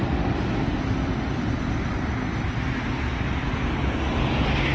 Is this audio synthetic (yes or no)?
no